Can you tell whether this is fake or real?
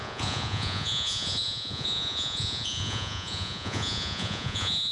fake